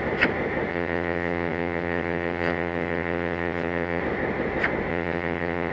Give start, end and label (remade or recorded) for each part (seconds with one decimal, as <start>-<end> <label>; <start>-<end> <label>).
0.0-0.7 recorded; 0.7-4.0 remade; 4.0-4.9 recorded; 4.9-5.7 remade